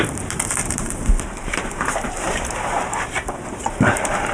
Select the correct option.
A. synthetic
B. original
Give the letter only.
A